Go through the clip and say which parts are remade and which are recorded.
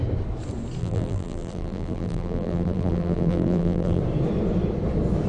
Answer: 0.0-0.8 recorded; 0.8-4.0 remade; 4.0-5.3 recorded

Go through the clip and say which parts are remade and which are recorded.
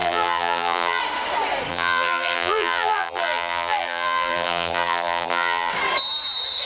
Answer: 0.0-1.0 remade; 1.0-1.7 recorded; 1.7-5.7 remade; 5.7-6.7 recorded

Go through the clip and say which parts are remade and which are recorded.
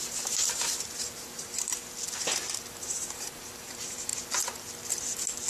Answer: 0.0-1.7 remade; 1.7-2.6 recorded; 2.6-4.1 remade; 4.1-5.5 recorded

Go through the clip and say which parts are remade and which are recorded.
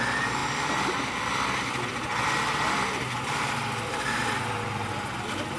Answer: 0.0-5.6 recorded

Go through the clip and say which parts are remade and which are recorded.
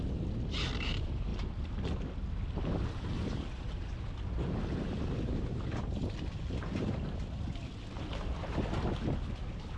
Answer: 0.0-9.8 recorded